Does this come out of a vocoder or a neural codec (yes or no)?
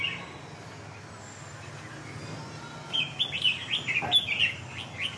no